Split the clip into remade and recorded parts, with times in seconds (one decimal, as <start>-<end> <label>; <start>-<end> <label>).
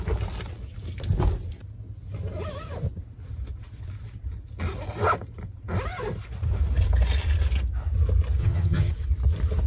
0.0-8.4 recorded; 8.4-8.9 remade; 8.9-9.7 recorded